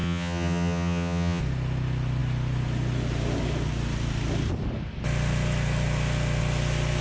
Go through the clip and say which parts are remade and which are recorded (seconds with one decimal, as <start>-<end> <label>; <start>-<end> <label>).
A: 0.0-1.4 remade; 1.4-7.0 recorded